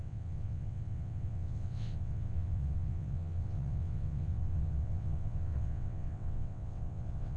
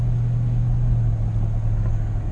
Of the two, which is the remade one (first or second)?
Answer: first